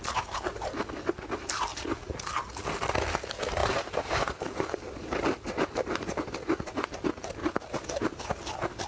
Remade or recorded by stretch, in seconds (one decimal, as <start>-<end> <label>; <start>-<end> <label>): 0.0-3.6 recorded; 3.6-6.2 remade; 6.2-7.4 recorded; 7.4-8.0 remade; 8.0-8.9 recorded